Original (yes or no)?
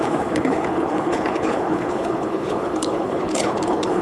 no